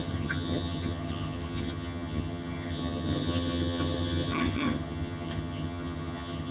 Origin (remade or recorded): remade